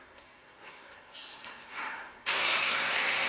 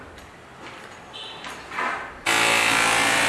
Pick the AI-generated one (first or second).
first